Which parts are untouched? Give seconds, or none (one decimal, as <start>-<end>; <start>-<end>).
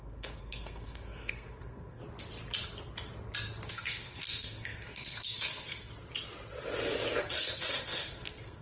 2.0-3.7; 5.9-7.3